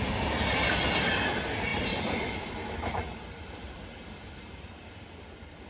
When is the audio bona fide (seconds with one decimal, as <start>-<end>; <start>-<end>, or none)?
0.0-1.7; 4.7-5.7

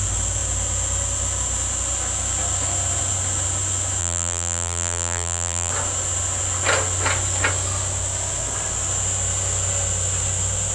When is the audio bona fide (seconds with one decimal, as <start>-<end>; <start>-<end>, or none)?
0.0-4.0; 5.7-10.7

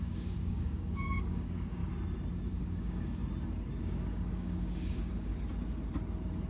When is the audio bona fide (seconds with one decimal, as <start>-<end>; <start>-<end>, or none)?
1.8-2.6; 3.2-3.8; 5.3-6.5

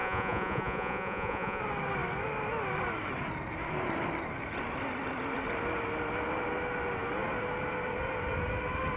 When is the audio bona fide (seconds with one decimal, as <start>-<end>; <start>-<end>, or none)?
1.6-9.0